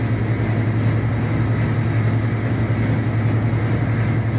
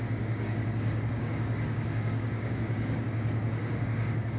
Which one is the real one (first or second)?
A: first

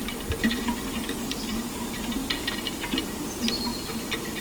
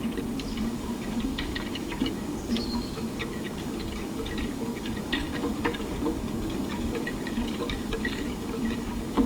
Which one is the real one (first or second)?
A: first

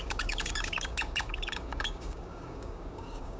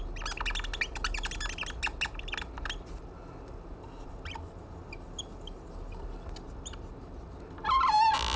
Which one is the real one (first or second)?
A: second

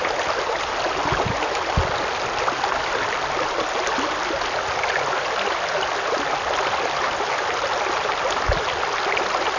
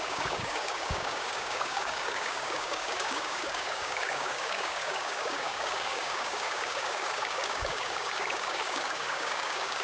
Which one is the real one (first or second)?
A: first